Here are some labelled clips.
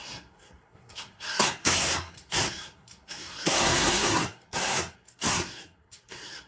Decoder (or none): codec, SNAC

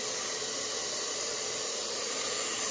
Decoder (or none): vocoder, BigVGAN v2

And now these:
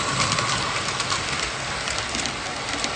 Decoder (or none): none